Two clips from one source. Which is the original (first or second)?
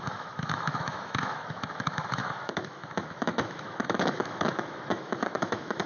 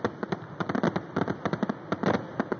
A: second